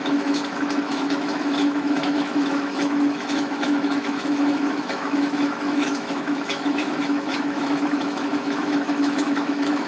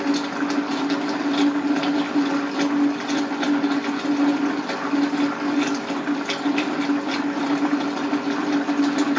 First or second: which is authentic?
second